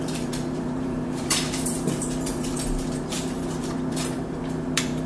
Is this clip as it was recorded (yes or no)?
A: no